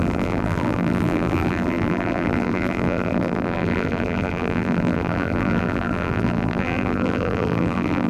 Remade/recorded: remade